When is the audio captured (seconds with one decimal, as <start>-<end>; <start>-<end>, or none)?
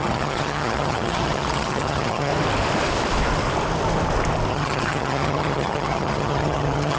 2.3-4.5